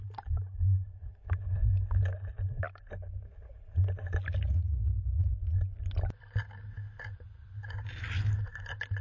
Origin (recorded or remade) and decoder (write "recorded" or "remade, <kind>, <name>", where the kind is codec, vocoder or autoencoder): recorded